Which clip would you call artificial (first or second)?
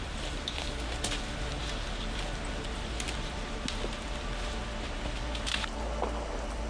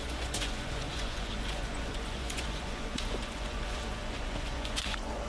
second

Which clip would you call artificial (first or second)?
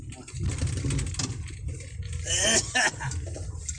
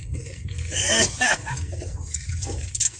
second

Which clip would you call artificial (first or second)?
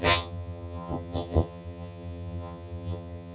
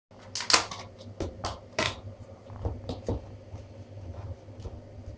first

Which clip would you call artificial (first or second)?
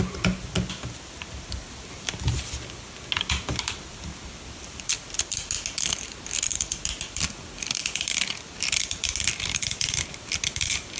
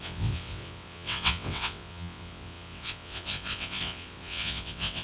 second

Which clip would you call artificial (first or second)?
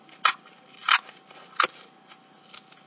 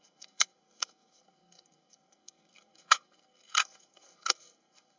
second